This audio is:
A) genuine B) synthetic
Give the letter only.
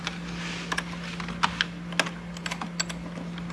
A